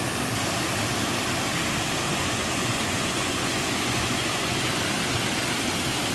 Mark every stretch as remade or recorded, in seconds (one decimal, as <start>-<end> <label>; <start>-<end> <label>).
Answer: 0.0-2.1 recorded; 2.1-4.8 remade; 4.8-6.1 recorded